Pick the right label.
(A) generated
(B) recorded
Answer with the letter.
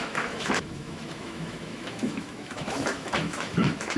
A